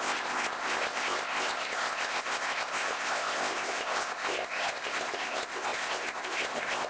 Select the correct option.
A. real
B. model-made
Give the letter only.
B